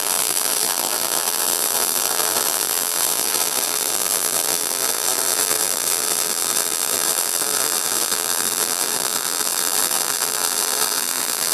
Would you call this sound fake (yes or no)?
yes